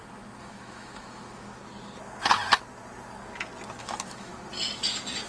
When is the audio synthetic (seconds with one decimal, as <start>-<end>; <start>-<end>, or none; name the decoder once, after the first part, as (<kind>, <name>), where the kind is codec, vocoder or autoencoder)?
0.0-1.6 (autoencoder, DAC-VAE); 3.8-4.3